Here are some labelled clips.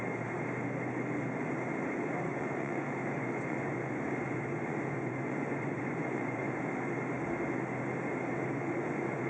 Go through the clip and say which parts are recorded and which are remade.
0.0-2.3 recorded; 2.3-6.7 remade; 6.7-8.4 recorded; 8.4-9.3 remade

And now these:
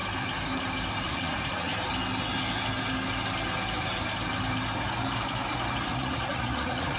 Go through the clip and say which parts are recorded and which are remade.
0.0-1.0 recorded; 1.0-1.7 remade; 1.7-5.9 recorded; 5.9-7.0 remade

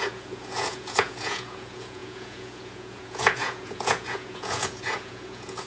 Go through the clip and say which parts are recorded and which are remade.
0.0-5.7 remade

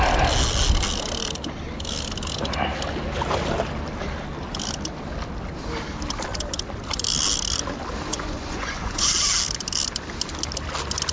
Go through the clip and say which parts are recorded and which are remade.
0.0-8.1 recorded; 8.1-9.1 remade; 9.1-11.1 recorded

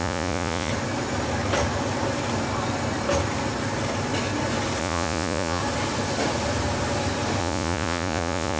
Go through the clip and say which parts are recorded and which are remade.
0.0-0.7 remade; 0.7-4.8 recorded; 4.8-5.6 remade; 5.6-7.4 recorded; 7.4-8.6 remade

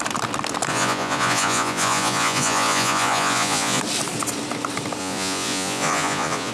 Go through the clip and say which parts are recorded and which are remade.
0.0-0.7 recorded; 0.7-3.8 remade; 3.8-5.0 recorded; 5.0-6.5 remade

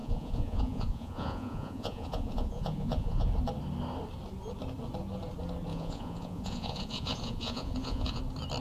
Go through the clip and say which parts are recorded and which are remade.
0.0-3.3 remade; 3.3-5.7 recorded; 5.7-8.2 remade; 8.2-8.6 recorded

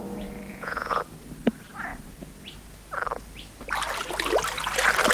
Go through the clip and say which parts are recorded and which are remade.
0.0-0.5 recorded; 0.5-1.0 remade; 1.0-5.1 recorded